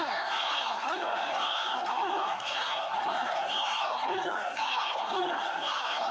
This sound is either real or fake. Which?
fake